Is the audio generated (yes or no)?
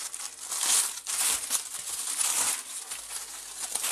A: no